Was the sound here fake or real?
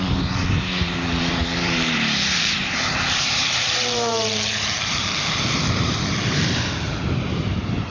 fake